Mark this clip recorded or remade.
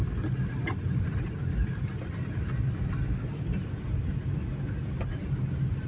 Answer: recorded